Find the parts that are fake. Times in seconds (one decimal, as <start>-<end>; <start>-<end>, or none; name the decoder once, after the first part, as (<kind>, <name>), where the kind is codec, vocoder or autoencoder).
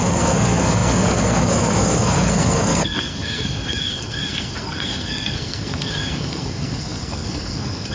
0.0-7.9 (codec, SNAC)